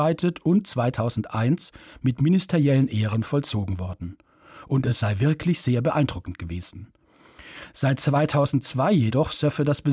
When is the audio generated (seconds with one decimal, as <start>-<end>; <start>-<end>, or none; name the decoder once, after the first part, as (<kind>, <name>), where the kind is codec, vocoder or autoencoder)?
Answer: none